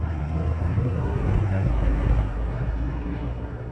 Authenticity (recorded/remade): remade